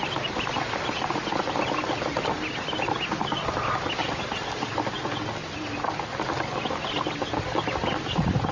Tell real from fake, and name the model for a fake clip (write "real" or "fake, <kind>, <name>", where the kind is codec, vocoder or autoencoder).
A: real